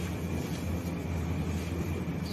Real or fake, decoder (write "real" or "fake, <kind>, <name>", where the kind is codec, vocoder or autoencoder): real